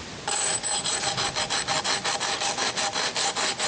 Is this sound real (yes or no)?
yes